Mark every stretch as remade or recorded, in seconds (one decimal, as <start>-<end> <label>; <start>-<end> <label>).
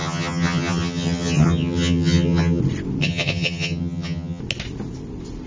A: 0.0-2.6 remade; 2.6-3.0 recorded; 3.0-4.4 remade; 4.4-5.5 recorded